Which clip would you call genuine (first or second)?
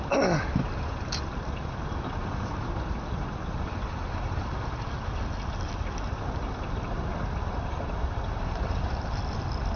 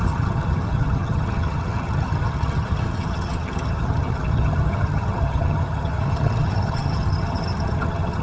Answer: first